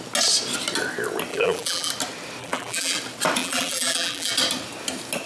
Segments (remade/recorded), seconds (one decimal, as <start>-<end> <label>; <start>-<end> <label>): 0.0-1.3 recorded; 1.3-1.9 remade; 1.9-2.4 recorded; 2.4-3.0 remade; 3.0-3.4 recorded; 3.4-4.3 remade; 4.3-5.3 recorded